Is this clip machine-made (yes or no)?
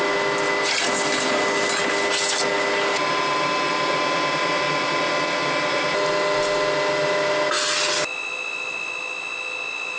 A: no